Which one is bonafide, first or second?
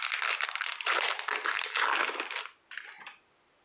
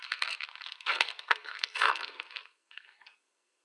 first